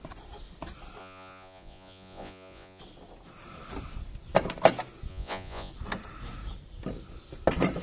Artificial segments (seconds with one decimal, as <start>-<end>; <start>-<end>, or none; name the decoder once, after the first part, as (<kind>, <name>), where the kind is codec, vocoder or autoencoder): 1.0-2.8 (vocoder, Vocos); 5.1-5.7